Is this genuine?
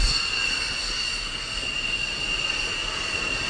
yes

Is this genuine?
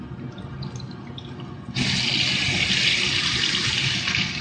yes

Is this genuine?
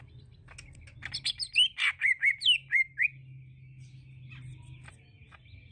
yes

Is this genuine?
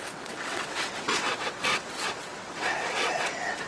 no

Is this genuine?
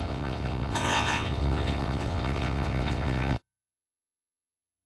no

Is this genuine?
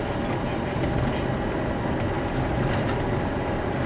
yes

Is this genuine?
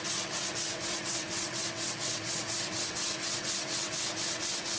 no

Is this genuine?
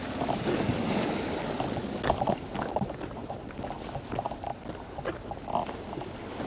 yes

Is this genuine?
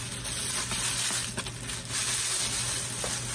yes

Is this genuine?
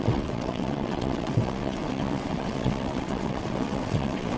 no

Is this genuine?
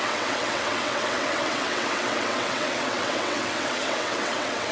no